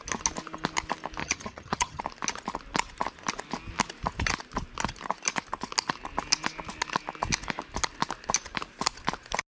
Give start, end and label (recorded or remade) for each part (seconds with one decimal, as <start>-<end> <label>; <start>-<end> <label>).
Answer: 0.0-1.2 recorded; 1.2-2.0 remade; 2.0-9.5 recorded